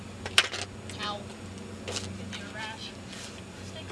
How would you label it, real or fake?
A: real